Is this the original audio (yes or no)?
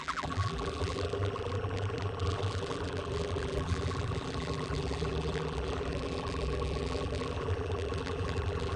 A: no